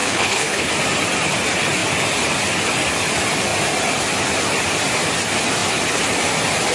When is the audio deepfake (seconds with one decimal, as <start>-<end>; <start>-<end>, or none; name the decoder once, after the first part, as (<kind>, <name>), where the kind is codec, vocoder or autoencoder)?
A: 0.0-0.7 (codec, HILCodec)